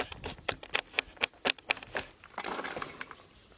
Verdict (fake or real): real